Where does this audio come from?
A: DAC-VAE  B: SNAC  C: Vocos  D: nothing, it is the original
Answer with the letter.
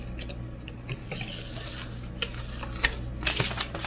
D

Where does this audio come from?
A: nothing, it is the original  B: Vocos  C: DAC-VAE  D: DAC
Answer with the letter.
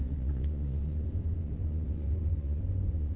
B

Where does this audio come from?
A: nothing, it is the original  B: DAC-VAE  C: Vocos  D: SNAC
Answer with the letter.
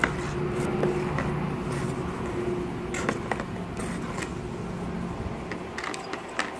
A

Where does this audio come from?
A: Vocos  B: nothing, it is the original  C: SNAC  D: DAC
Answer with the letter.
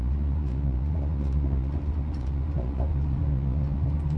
A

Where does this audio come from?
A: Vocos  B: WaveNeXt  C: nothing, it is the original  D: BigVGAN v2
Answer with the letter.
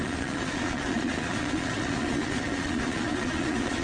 A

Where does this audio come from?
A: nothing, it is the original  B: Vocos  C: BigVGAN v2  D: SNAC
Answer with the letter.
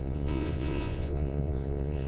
B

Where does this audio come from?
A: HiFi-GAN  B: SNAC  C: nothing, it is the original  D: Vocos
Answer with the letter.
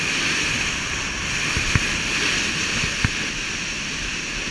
C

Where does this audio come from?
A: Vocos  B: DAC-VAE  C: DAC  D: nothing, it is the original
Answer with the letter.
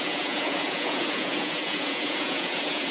A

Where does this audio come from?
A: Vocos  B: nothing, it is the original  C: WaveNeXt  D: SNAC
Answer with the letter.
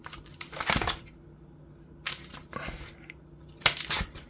B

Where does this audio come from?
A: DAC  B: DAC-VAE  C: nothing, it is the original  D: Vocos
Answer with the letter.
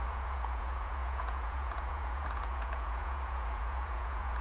D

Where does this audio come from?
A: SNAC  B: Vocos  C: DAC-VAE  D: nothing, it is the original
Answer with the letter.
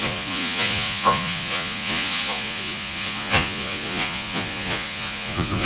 B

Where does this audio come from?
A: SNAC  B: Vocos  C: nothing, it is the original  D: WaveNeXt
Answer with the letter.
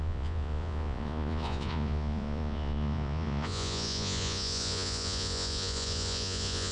B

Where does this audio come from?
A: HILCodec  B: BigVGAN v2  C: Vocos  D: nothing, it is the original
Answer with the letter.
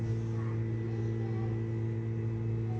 D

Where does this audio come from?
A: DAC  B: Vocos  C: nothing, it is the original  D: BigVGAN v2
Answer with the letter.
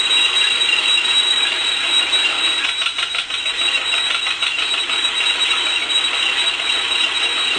C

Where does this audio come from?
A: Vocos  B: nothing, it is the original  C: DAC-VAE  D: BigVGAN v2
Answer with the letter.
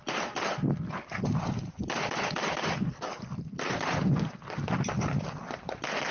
B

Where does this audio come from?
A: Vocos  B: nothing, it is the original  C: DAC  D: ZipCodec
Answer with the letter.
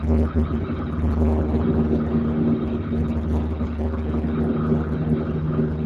B